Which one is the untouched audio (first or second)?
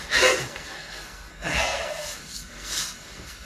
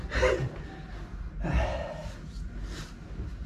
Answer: second